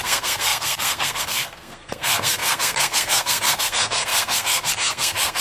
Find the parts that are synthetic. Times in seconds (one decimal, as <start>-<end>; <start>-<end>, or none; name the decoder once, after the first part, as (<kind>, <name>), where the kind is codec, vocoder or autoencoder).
0.0-5.4 (codec, SNAC)